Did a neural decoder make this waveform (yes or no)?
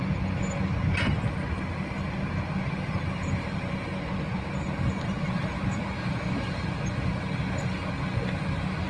no